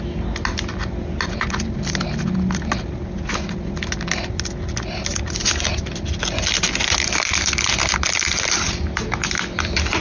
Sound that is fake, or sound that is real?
real